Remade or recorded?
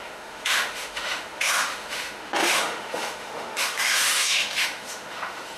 remade